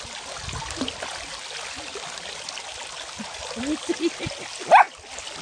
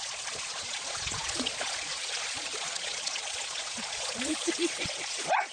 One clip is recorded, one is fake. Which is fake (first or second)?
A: second